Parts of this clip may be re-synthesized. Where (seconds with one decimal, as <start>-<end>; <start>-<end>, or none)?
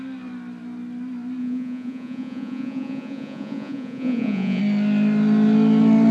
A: 1.4-4.6